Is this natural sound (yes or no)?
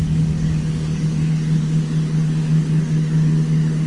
no